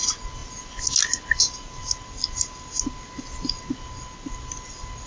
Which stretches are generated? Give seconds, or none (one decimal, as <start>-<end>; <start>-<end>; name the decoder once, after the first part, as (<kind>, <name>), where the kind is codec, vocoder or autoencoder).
none